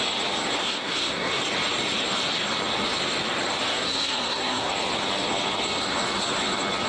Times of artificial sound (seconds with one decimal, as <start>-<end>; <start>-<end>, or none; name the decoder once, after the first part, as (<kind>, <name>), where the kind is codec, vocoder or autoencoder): 0.6-1.4 (codec, SNAC); 3.7-4.7